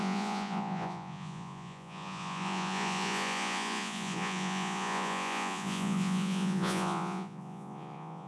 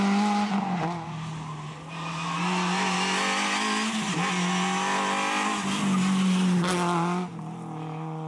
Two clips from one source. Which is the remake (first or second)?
first